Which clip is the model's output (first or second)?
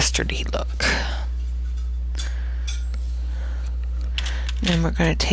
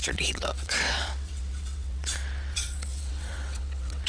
second